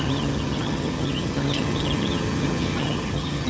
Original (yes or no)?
no